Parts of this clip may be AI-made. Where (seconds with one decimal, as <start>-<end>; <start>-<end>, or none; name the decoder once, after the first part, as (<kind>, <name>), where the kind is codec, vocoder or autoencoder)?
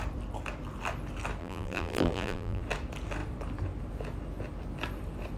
1.4-2.6 (vocoder, BigVGAN v2)